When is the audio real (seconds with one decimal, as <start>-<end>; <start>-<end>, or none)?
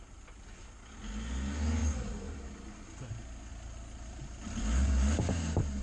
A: 0.0-1.8; 2.5-3.5; 4.9-5.8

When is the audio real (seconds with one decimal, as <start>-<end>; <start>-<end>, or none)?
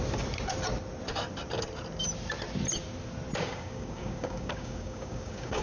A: 0.0-3.4